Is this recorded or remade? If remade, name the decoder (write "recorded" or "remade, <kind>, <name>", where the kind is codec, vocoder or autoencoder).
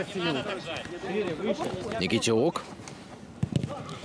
recorded